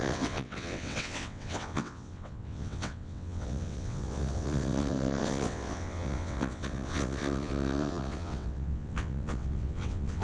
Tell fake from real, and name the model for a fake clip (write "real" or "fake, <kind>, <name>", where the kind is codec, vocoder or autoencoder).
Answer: fake, vocoder, WaveNeXt